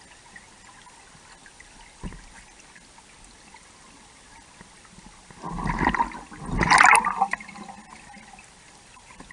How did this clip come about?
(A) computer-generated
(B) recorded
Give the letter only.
B